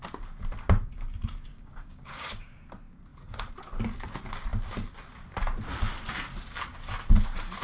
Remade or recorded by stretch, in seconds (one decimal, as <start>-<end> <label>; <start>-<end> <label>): 0.0-1.5 recorded; 1.5-2.7 remade; 2.7-7.6 recorded